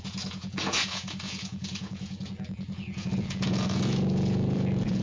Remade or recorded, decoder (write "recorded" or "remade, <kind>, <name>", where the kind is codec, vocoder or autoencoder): remade, vocoder, Vocos